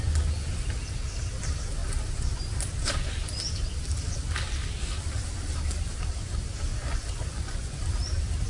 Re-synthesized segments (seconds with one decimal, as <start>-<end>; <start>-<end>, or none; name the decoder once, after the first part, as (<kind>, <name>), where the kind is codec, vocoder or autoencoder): 6.7-7.8 (vocoder, Vocos)